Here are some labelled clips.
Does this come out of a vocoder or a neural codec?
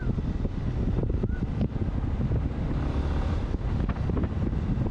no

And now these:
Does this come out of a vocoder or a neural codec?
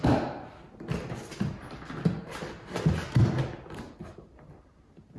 no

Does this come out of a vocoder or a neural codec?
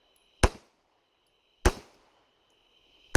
no